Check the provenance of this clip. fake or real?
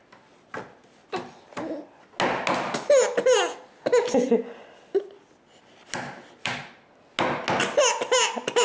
real